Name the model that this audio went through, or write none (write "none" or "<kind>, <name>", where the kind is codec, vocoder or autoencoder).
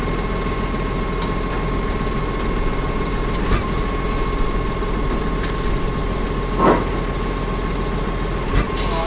none